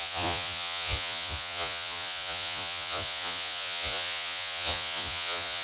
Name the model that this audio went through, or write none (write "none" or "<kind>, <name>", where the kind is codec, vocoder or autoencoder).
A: vocoder, Vocos